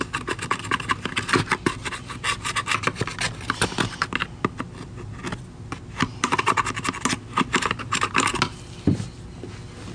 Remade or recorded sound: recorded